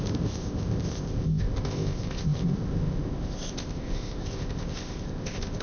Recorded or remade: remade